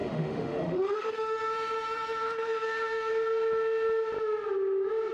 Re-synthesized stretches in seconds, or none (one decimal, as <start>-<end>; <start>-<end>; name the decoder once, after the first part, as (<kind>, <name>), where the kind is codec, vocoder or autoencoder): 0.0-3.1 (autoencoder, DAC-VAE)